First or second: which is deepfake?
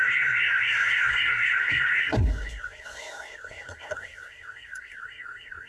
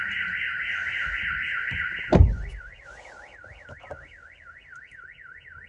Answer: first